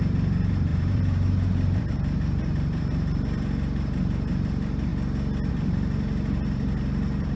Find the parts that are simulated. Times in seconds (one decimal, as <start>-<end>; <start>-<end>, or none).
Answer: 0.0-4.9; 5.5-7.4